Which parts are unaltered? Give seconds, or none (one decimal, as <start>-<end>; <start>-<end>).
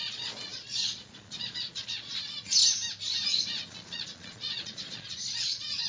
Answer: 2.6-3.7